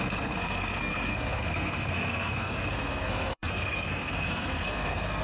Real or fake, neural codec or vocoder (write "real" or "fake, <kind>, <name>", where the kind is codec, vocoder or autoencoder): fake, codec, SNAC